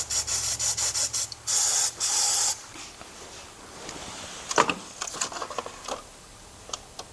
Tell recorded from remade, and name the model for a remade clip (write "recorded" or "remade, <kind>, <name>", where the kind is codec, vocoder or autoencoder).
recorded